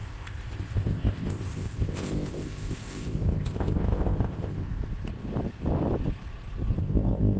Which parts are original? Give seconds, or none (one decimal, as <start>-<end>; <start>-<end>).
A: 4.8-6.8